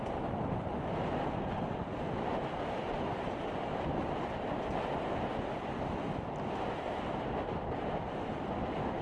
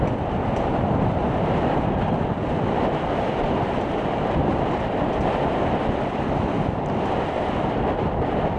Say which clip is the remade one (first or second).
second